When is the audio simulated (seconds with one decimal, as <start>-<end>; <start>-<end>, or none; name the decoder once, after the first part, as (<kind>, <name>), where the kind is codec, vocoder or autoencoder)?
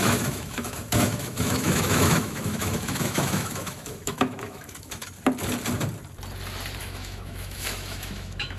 0.0-5.0 (autoencoder, DAC-VAE); 6.8-8.6